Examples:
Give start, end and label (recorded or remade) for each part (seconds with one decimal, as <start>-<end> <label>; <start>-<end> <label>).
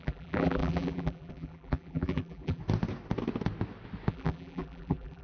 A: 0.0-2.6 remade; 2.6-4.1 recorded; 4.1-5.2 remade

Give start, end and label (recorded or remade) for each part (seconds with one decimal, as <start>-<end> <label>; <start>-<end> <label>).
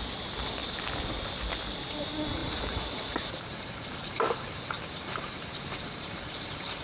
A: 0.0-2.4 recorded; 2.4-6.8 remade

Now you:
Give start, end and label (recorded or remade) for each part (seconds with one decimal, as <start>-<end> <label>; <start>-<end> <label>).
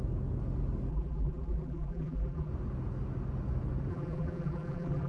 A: 0.0-0.9 recorded; 0.9-2.5 remade; 2.5-3.9 recorded; 3.9-5.1 remade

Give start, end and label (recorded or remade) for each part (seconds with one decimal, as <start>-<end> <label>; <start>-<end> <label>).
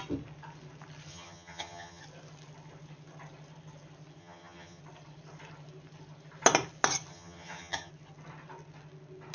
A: 0.0-1.1 recorded; 1.1-2.0 remade; 2.0-4.2 recorded; 4.2-4.8 remade; 4.8-7.1 recorded; 7.1-7.9 remade; 7.9-9.3 recorded